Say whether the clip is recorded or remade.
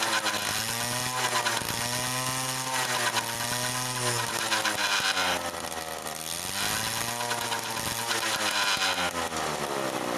recorded